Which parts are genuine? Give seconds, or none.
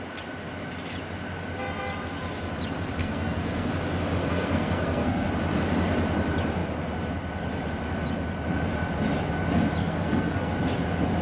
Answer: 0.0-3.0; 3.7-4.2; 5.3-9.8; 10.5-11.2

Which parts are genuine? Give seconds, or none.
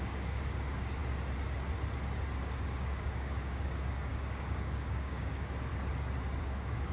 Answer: 1.0-2.4; 5.7-6.4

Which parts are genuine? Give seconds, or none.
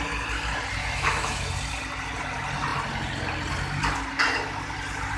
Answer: 0.0-0.8; 1.5-5.2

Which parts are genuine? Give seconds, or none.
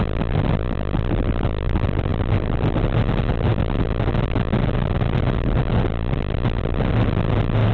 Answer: 0.0-7.7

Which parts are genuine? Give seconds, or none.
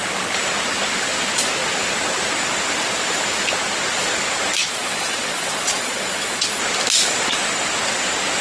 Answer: 0.0-4.6; 6.6-8.4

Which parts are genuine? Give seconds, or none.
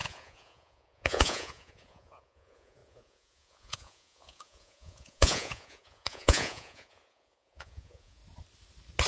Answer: 8.2-9.1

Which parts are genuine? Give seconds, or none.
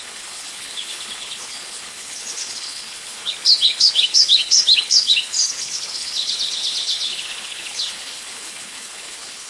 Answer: none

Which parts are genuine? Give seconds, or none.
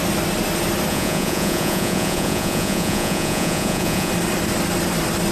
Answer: 0.0-0.9; 4.1-5.3